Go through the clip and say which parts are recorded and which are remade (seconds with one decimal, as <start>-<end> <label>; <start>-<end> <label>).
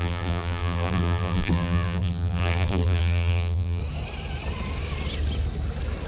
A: 0.0-3.8 remade; 3.8-6.1 recorded